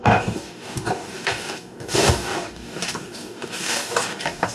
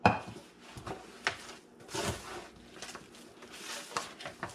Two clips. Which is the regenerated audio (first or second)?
first